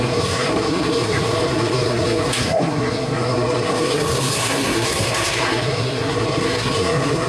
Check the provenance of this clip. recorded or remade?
remade